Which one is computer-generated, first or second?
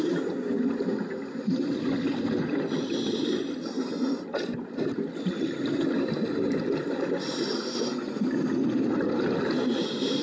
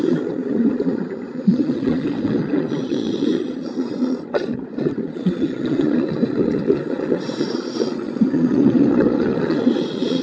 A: second